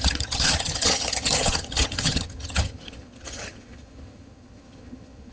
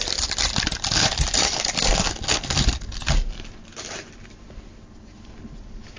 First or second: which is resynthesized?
first